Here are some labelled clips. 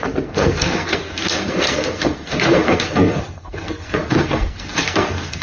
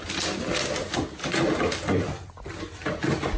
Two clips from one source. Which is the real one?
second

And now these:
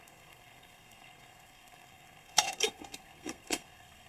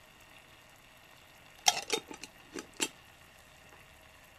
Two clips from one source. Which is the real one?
second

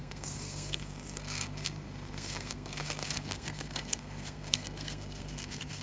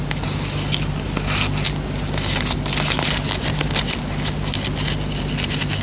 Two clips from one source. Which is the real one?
second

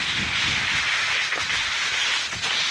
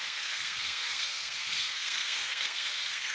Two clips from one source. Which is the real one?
first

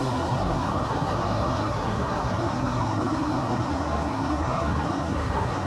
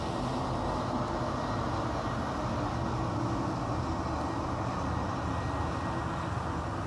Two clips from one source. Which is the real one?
second